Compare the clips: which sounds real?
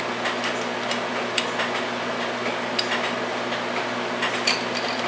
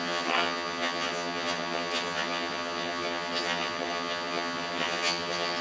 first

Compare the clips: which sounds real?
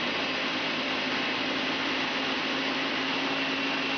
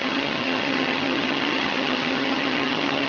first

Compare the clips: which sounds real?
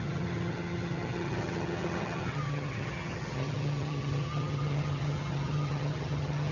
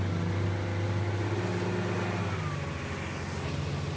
second